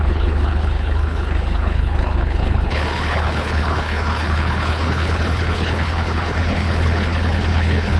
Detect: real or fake fake